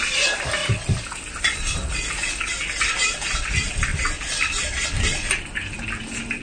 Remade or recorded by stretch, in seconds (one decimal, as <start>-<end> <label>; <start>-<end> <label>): 0.0-0.6 recorded; 0.6-1.4 remade; 1.4-3.9 recorded; 3.9-5.3 remade; 5.3-6.4 recorded